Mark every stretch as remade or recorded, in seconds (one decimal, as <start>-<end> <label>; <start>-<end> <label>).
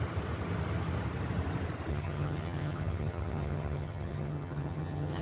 0.0-1.9 recorded; 1.9-5.2 remade